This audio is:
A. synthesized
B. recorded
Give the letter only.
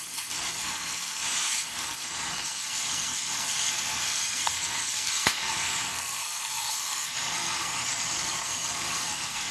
A